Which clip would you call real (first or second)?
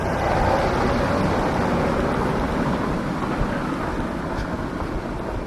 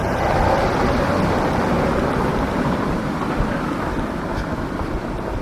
first